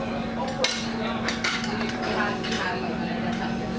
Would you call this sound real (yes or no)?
yes